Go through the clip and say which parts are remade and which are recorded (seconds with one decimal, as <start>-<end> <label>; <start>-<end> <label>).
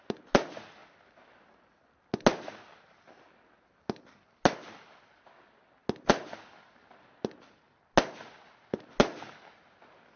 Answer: 0.0-10.2 recorded